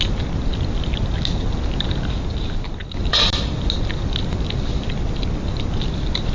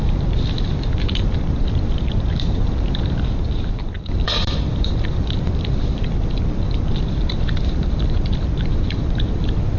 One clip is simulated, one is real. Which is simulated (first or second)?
second